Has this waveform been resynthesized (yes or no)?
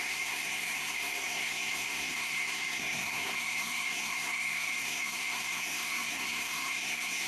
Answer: yes